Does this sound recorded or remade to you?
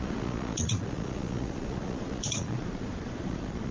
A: remade